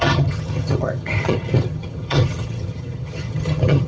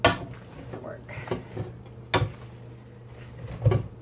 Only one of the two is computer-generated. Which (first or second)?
first